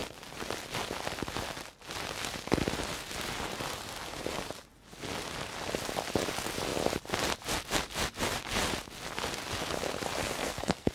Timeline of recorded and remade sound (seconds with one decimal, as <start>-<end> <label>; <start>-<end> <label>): 0.0-10.2 recorded; 10.2-10.9 remade